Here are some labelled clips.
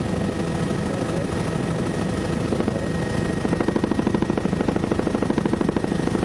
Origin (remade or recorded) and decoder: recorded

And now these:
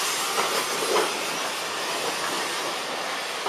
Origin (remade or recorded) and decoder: recorded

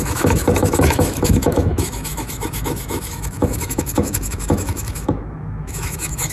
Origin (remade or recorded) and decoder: remade, autoencoder, DAC-VAE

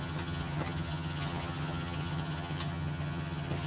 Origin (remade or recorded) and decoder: remade, vocoder, HiFi-GAN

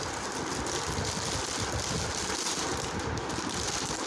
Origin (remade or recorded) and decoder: recorded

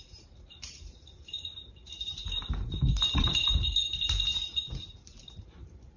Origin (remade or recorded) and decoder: remade, vocoder, BigVGAN v2